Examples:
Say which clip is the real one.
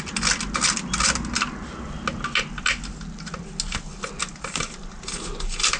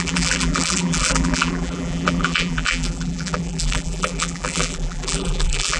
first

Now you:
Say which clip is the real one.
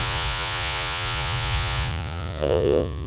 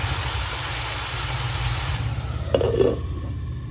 second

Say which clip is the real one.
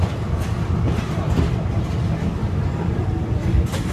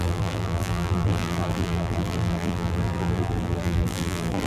first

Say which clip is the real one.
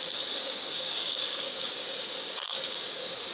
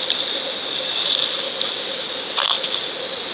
second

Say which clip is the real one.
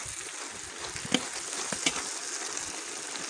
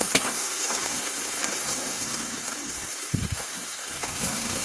first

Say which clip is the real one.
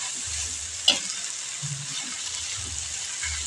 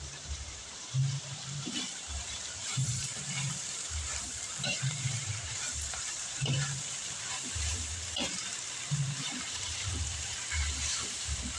first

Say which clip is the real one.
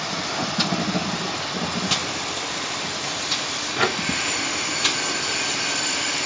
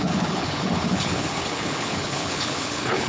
first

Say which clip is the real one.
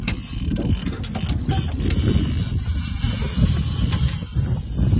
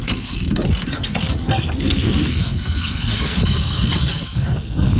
first